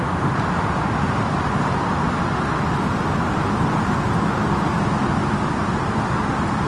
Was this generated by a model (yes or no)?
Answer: no